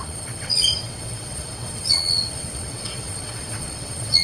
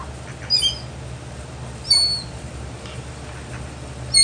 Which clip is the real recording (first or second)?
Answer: second